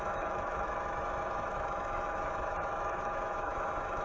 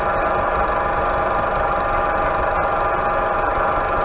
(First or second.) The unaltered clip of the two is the second